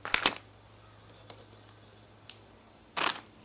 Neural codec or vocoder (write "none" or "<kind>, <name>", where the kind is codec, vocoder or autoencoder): none